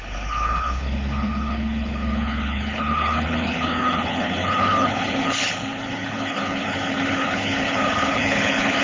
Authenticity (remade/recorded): remade